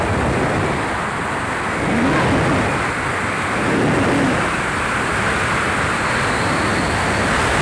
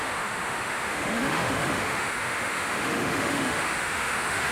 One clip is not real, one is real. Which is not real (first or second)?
second